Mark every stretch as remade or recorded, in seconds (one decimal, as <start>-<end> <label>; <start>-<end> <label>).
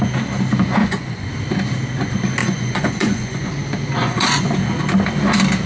0.0-0.8 recorded; 0.8-1.3 remade; 1.3-2.4 recorded; 2.4-3.5 remade; 3.5-4.0 recorded; 4.0-4.5 remade; 4.5-5.7 recorded